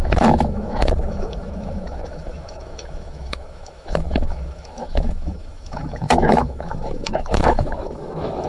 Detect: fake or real fake